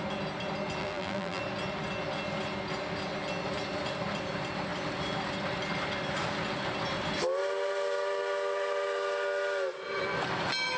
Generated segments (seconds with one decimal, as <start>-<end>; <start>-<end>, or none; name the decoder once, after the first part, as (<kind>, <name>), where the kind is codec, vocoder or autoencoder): 0.8-1.4 (vocoder, BigVGAN v2)